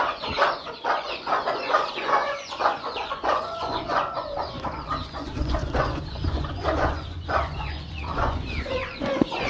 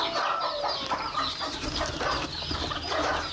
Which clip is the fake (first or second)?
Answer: first